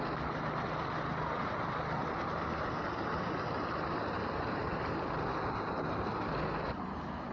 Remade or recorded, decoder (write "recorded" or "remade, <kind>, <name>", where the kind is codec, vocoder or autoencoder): recorded